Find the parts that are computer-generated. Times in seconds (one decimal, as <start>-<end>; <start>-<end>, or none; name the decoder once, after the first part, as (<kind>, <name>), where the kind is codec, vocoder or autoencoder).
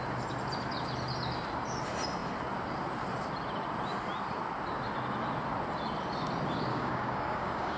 6.7-7.8 (codec, DAC)